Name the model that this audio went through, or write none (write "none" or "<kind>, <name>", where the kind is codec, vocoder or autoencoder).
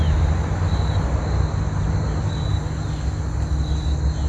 none